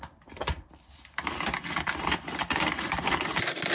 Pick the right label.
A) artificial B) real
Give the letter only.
B